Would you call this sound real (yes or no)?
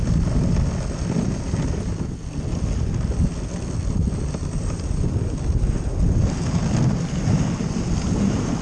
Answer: yes